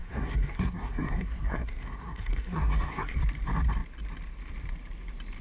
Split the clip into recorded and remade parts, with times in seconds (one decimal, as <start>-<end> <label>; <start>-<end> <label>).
0.0-3.2 remade; 3.2-5.4 recorded